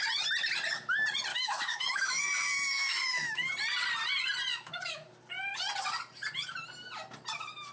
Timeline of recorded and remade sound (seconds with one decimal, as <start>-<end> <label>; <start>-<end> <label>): 0.0-1.3 recorded; 1.3-3.5 remade; 3.5-4.5 recorded; 4.5-5.1 remade; 5.1-7.7 recorded